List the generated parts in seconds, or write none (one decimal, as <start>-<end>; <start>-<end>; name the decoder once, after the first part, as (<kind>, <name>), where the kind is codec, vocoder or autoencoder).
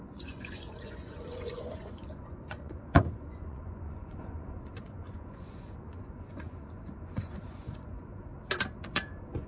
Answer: 0.0-8.3 (vocoder, Vocos); 8.8-9.5